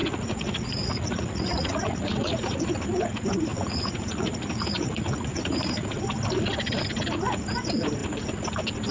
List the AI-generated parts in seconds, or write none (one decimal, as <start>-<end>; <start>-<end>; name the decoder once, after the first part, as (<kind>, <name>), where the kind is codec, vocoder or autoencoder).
0.0-2.7 (vocoder, Vocos); 3.5-6.0